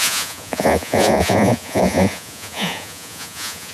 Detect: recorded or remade remade